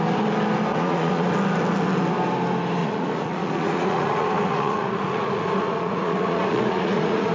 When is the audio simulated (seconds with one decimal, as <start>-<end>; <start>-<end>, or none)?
0.7-1.3; 2.8-7.3